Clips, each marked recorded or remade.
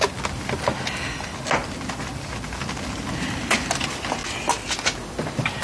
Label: recorded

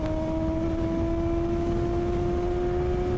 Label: recorded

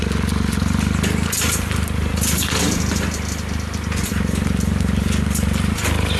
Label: recorded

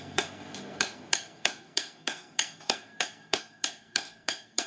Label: remade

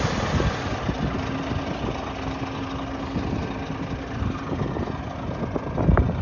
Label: recorded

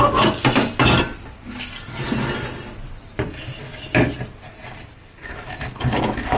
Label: recorded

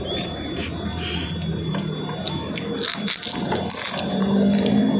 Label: recorded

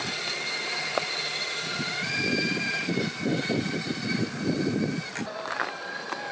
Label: recorded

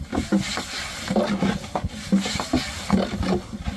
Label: recorded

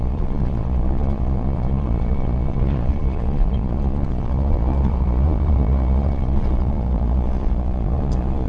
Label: remade